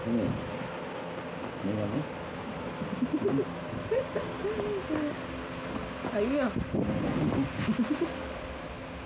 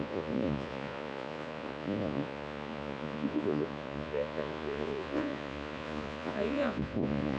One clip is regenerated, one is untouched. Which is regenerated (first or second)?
second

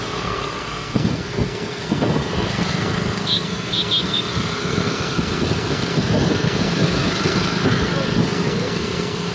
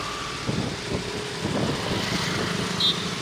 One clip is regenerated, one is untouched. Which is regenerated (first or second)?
first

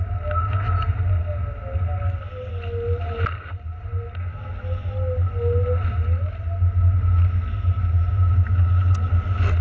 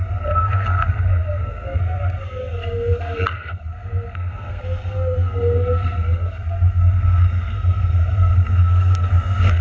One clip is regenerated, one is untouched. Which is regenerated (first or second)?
second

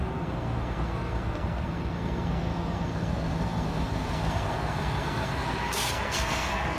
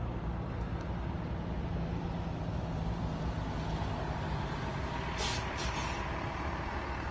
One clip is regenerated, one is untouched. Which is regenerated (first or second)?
first